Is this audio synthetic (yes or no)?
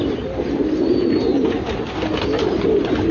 no